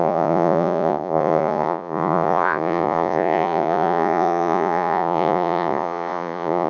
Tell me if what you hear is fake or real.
fake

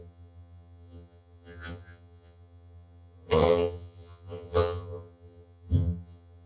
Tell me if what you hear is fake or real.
fake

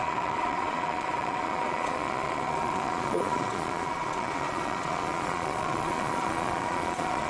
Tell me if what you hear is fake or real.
fake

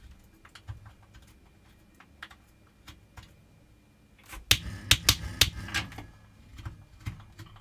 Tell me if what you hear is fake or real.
real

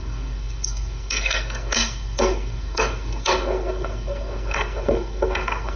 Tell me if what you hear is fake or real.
fake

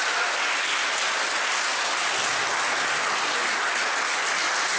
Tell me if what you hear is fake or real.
real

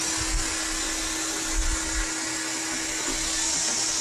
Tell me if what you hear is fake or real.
real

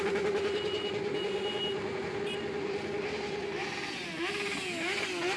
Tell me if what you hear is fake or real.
real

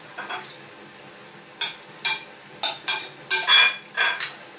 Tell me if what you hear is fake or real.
real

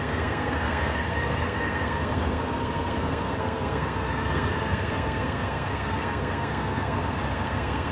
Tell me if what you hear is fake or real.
fake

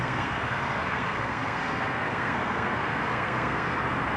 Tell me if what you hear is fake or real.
fake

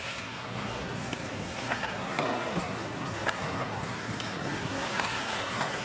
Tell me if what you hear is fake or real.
fake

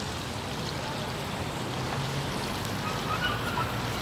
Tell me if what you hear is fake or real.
real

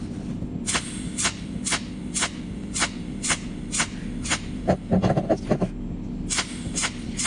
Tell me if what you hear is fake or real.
real